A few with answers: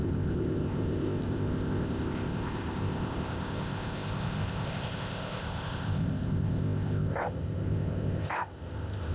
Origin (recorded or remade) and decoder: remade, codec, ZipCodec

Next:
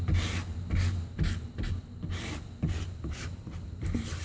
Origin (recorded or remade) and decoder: recorded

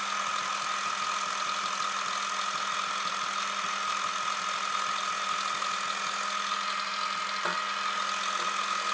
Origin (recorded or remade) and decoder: recorded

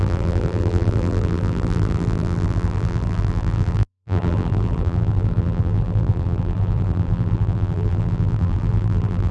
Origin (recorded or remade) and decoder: remade, vocoder, BigVGAN v2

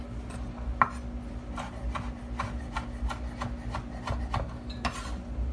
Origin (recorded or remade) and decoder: recorded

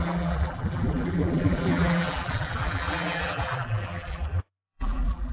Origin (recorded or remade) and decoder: remade, vocoder, BigVGAN v2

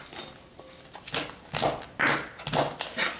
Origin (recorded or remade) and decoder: recorded